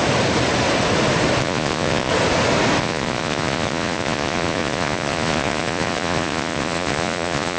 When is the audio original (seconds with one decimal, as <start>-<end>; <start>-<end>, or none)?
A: 0.0-1.4; 2.1-2.8